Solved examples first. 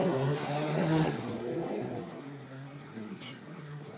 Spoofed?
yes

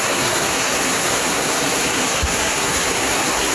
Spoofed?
yes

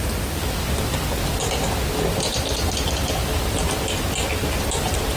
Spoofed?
no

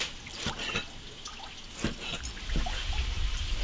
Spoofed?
no